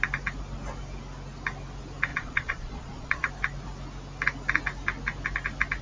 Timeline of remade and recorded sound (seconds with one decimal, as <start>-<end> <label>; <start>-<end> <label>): 0.0-2.1 recorded; 2.1-3.3 remade; 3.3-5.8 recorded